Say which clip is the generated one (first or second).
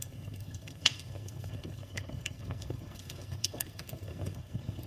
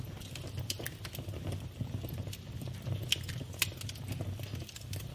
first